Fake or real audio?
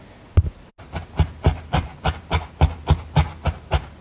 real